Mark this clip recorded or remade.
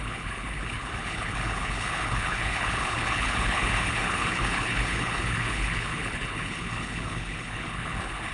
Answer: remade